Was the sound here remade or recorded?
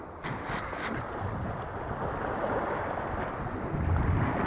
recorded